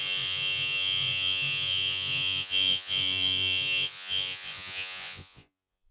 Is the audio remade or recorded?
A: remade